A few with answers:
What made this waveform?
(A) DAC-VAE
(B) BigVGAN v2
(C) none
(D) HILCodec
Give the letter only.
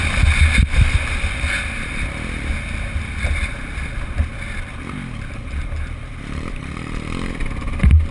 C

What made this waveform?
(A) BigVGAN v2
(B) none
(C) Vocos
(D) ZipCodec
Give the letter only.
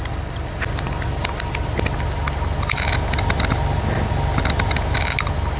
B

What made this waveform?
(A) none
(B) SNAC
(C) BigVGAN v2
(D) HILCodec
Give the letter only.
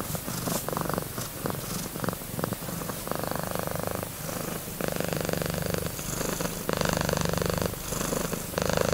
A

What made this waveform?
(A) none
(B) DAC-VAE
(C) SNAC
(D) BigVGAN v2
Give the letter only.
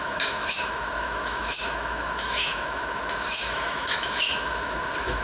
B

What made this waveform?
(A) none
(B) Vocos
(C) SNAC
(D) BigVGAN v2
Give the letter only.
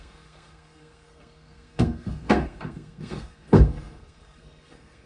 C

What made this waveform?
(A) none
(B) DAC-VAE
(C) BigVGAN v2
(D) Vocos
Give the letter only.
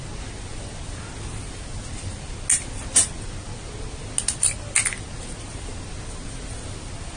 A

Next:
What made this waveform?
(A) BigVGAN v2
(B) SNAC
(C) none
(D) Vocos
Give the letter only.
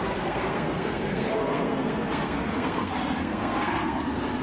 B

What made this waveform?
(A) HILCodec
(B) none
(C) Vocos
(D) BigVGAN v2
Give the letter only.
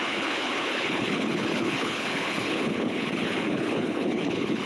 A